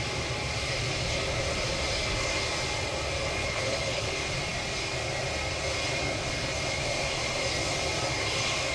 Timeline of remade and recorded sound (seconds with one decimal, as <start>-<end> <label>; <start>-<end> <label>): 0.0-3.4 recorded; 3.4-4.1 remade; 4.1-8.7 recorded